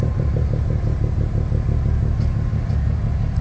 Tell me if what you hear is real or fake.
real